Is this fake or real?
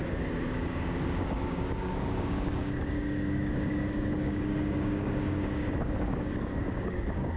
fake